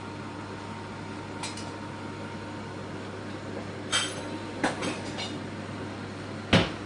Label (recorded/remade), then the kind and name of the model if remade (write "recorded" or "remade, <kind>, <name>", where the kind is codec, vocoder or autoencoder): recorded